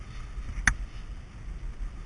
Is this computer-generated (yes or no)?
no